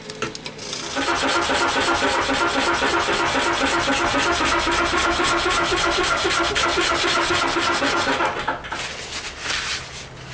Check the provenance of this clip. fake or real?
real